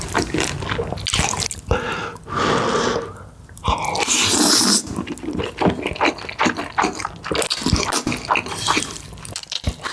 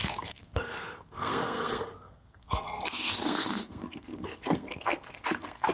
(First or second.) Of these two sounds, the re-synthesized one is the second